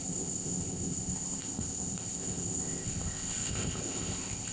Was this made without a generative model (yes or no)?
no